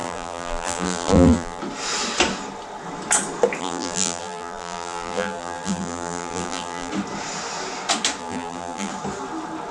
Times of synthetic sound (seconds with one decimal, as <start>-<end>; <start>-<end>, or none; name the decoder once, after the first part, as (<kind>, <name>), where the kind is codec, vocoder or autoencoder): 0.0-1.6 (vocoder, BigVGAN v2); 3.6-6.9; 8.2-8.9